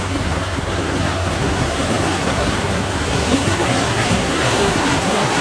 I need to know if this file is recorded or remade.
remade